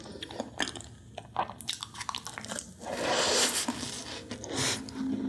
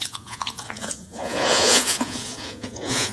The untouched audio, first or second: first